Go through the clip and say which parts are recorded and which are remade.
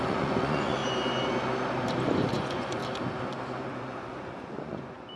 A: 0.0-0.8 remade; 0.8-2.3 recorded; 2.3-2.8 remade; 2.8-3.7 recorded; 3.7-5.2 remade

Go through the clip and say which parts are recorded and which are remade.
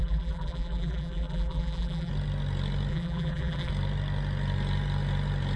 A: 0.0-2.1 remade; 2.1-2.9 recorded; 2.9-3.7 remade; 3.7-5.6 recorded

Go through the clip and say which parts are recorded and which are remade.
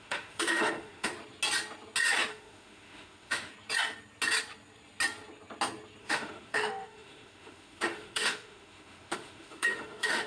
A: 0.0-1.1 remade; 1.1-2.3 recorded; 2.3-3.5 remade; 3.5-6.0 recorded; 6.0-10.3 remade